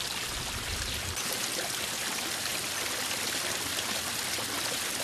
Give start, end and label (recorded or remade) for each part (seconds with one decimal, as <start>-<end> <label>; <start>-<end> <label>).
0.0-5.0 recorded